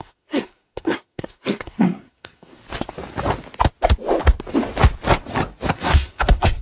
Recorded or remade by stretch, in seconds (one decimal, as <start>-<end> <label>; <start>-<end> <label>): 0.0-2.6 remade; 2.6-5.7 recorded; 5.7-6.6 remade